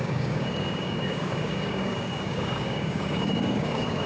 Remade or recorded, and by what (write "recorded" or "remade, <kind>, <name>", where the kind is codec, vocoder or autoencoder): remade, codec, DAC